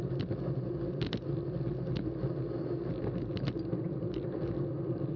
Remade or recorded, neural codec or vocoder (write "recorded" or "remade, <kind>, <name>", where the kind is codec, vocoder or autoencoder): recorded